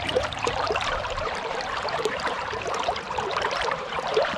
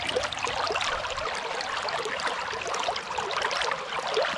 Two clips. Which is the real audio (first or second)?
second